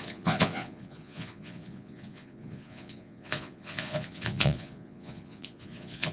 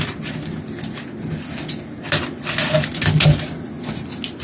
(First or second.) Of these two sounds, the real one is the second